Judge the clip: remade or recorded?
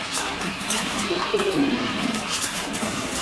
remade